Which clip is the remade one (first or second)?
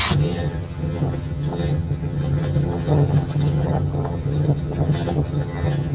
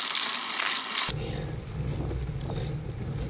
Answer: first